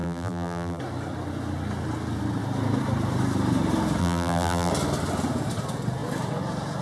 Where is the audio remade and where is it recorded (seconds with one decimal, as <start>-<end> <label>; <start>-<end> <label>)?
0.0-0.8 remade; 0.8-4.0 recorded; 4.0-4.7 remade; 4.7-6.8 recorded